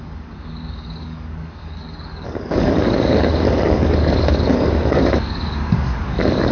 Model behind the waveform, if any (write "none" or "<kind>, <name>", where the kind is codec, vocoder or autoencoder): codec, DAC